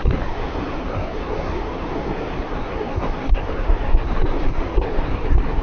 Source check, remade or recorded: remade